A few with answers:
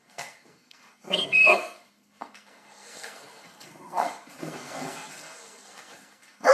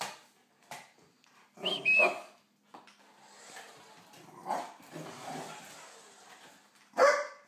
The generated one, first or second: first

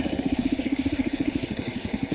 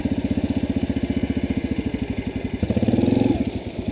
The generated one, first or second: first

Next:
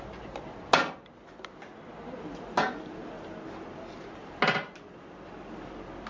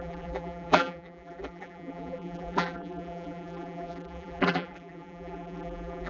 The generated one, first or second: second